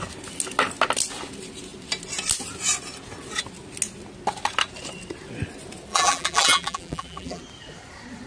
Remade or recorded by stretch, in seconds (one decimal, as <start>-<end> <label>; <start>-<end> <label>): 0.0-5.9 recorded; 5.9-7.4 remade; 7.4-8.3 recorded